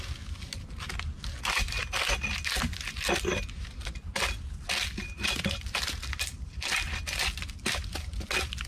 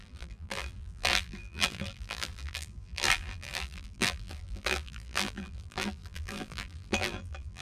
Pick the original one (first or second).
first